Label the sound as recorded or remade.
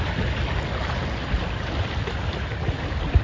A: recorded